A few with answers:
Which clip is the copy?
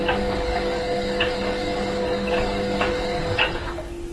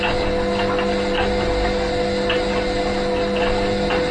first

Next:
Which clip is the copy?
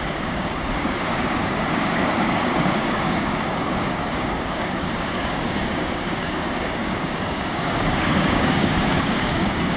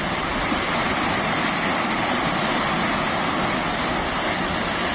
first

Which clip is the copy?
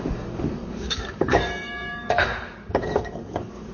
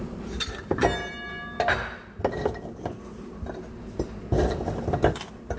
first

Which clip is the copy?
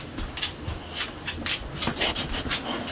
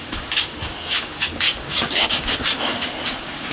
second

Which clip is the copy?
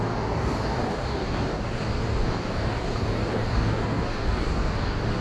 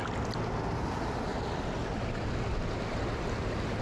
first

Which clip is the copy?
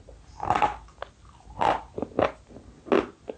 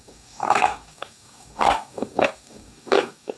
second